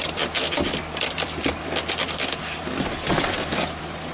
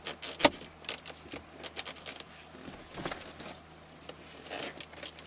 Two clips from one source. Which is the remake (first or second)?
first